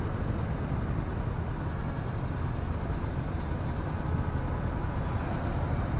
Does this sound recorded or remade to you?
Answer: recorded